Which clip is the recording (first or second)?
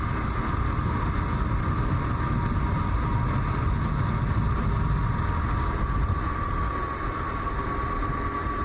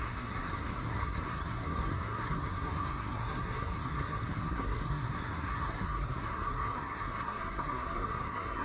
first